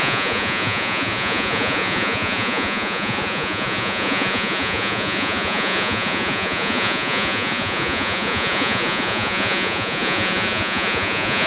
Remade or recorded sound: remade